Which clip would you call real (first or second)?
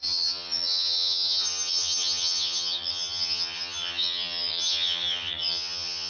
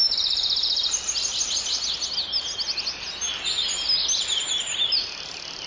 second